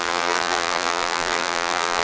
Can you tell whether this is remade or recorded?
remade